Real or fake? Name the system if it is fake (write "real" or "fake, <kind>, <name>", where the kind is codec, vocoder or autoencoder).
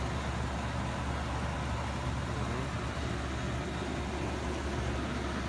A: real